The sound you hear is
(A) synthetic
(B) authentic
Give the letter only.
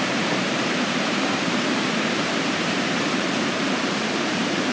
A